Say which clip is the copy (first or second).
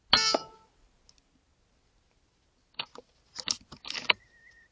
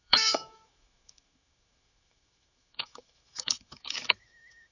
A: second